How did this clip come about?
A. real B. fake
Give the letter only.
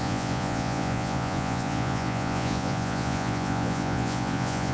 B